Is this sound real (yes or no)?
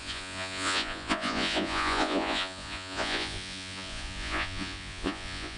no